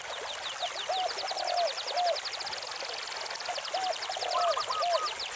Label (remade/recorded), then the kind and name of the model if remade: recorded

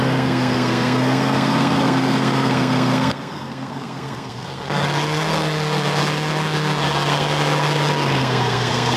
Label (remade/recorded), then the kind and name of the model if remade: remade, codec, SNAC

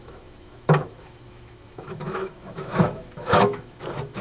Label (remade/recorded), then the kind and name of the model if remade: remade, autoencoder, DAC-VAE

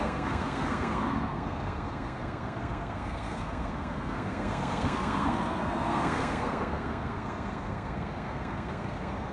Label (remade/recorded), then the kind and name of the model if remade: remade, codec, SNAC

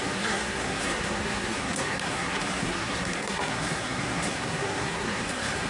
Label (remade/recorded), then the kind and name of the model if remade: remade, codec, SNAC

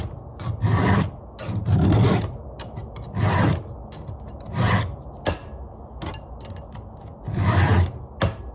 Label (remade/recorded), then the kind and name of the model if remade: recorded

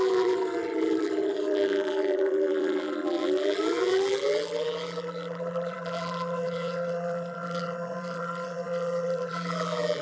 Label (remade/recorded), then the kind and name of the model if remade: remade, vocoder, BigVGAN v2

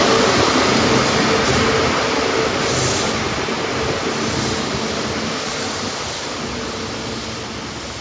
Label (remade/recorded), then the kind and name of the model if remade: recorded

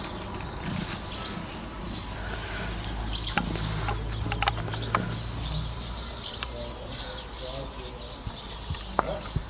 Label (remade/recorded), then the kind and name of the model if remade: recorded